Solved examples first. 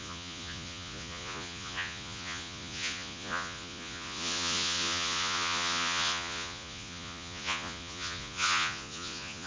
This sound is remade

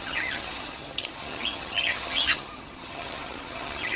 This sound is remade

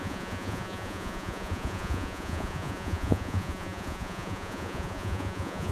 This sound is remade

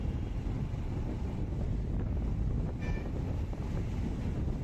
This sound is recorded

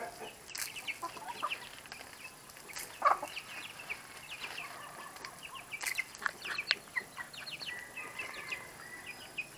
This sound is recorded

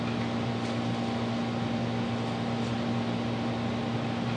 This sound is recorded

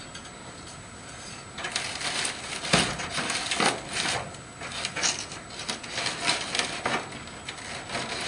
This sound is recorded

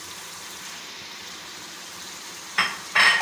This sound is remade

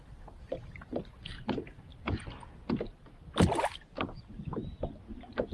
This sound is recorded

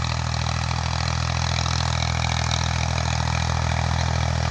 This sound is recorded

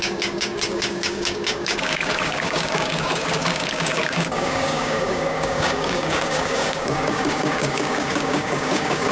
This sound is remade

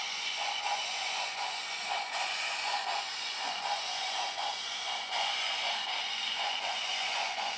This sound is remade